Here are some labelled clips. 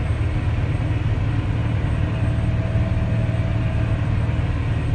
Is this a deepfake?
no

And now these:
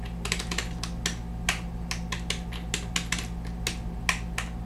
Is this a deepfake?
no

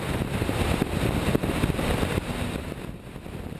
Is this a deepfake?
yes